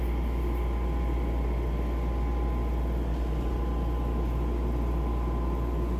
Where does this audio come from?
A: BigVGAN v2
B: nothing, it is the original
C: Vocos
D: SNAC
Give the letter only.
B